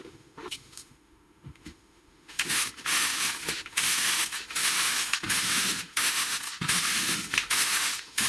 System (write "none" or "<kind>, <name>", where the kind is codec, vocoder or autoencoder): autoencoder, DAC-VAE